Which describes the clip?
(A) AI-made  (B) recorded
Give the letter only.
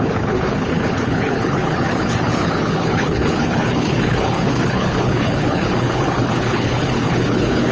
A